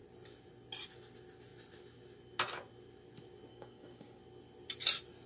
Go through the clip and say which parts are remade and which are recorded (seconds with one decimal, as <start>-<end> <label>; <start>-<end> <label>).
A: 0.0-3.5 recorded; 3.5-4.2 remade; 4.2-5.3 recorded